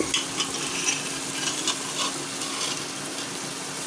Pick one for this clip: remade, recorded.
recorded